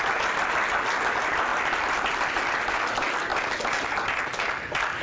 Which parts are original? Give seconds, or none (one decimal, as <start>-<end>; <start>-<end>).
0.0-5.0